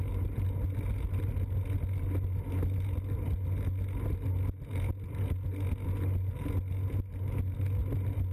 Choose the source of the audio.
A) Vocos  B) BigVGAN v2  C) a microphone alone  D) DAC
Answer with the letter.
C